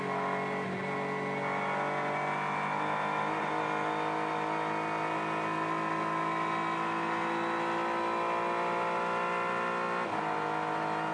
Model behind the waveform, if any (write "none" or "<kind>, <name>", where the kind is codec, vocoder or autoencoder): none